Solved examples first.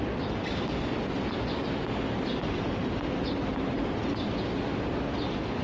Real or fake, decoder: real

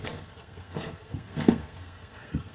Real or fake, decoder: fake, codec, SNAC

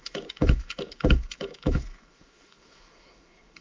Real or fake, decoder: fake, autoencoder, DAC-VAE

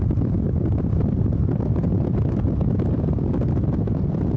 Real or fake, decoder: real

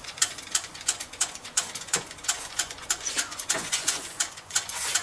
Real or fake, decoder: fake, vocoder, Vocos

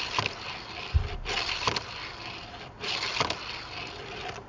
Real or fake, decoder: real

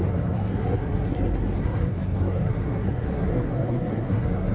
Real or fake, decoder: fake, codec, SNAC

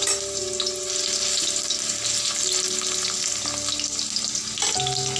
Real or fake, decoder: real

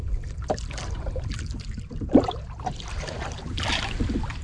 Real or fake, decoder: real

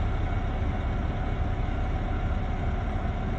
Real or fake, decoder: real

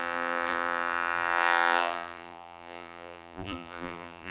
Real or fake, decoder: fake, vocoder, BigVGAN v2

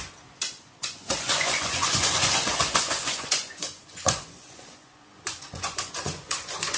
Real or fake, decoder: fake, vocoder, Vocos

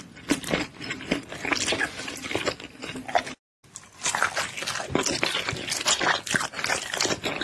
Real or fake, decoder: real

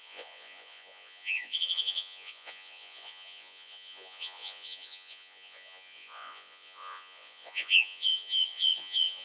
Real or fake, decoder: fake, vocoder, Vocos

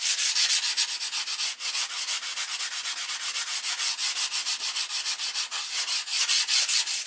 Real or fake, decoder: real